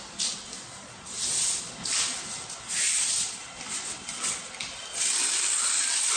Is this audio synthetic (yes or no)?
no